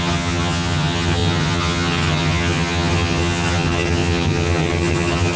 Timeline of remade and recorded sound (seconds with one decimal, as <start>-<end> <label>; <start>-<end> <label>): 0.0-5.4 remade